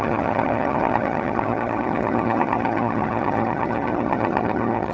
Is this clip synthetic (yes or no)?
yes